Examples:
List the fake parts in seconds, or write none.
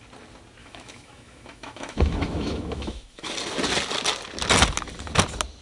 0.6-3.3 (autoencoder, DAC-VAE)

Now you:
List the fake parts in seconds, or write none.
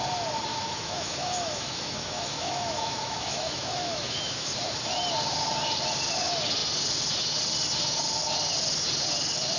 0.5-4.5 (autoencoder, DAC-VAE)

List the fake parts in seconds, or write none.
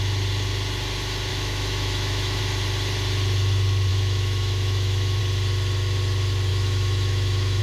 1.3-2.4 (autoencoder, DAC-VAE); 3.9-5.2; 6.5-7.6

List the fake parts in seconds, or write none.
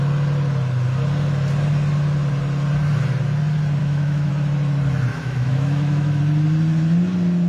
3.8-4.3 (autoencoder, DAC-VAE); 5.1-6.2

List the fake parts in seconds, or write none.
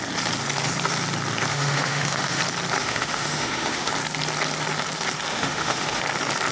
1.5-2.4 (autoencoder, DAC-VAE); 2.8-3.9; 5.3-6.0